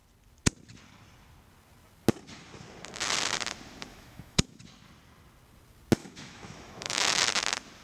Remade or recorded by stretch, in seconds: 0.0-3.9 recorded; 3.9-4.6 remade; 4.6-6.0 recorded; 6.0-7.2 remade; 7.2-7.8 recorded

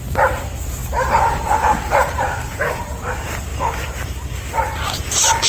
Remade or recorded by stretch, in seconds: 0.0-5.5 remade